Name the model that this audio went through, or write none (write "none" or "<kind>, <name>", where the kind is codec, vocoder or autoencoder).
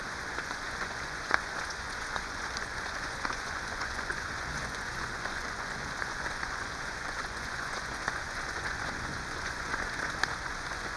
vocoder, Vocos